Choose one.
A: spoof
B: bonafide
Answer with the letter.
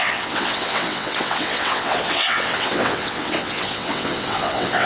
A